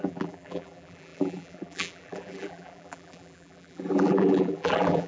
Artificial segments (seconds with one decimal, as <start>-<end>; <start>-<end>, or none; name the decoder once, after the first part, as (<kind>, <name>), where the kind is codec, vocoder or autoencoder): 0.0-5.1 (vocoder, BigVGAN v2)